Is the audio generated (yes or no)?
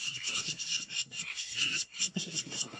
yes